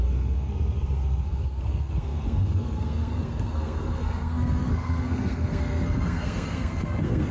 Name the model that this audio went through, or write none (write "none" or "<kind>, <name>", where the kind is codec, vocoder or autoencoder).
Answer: codec, SNAC